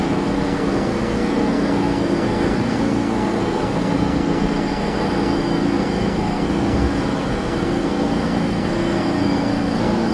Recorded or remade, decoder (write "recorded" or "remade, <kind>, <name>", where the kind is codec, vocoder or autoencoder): remade, codec, SNAC